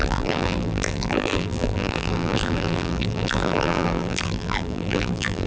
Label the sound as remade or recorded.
remade